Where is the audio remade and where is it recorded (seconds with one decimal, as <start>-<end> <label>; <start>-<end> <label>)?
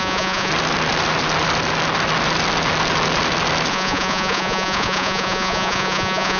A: 0.0-0.5 remade; 0.5-3.7 recorded; 3.7-6.4 remade